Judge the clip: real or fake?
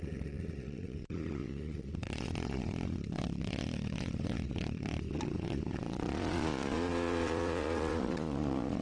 fake